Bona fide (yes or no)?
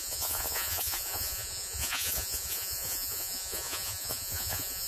no